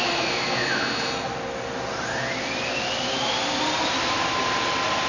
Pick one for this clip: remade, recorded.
recorded